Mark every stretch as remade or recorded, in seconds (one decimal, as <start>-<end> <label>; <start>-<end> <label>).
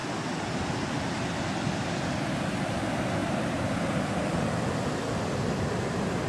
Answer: 0.0-6.3 recorded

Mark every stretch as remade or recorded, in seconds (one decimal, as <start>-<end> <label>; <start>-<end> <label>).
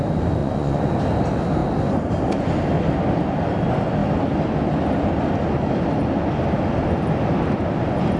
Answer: 0.0-0.4 recorded; 0.4-0.9 remade; 0.9-8.2 recorded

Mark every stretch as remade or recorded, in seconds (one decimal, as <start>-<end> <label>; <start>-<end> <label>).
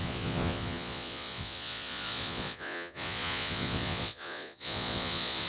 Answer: 0.0-5.5 remade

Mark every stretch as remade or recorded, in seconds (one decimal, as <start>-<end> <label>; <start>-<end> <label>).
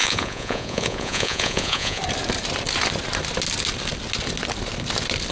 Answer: 0.0-2.0 remade; 2.0-5.3 recorded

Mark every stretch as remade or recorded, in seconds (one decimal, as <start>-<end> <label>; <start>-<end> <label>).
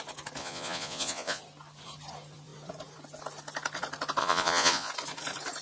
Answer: 0.0-0.4 recorded; 0.4-1.4 remade; 1.4-4.2 recorded; 4.2-4.9 remade; 4.9-5.6 recorded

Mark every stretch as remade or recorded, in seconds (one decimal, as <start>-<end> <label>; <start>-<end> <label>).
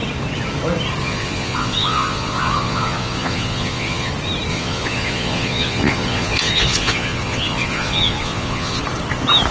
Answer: 0.0-1.0 recorded; 1.0-4.1 remade; 4.1-4.5 recorded; 4.5-8.8 remade; 8.8-9.5 recorded